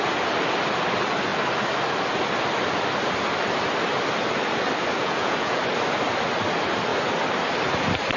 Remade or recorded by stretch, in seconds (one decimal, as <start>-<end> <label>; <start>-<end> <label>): 0.0-5.0 recorded; 5.0-5.6 remade; 5.6-8.2 recorded